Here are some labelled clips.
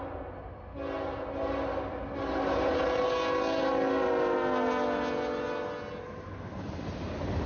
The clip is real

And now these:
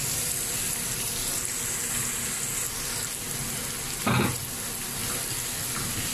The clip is real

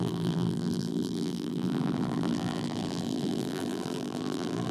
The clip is fake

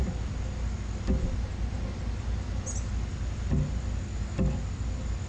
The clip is real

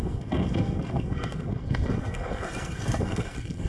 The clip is fake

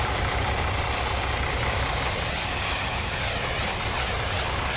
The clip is fake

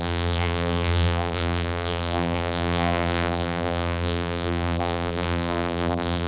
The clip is fake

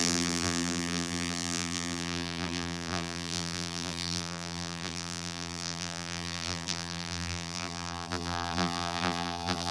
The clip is fake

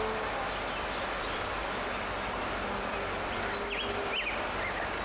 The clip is real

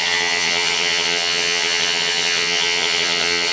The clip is fake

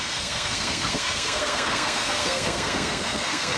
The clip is fake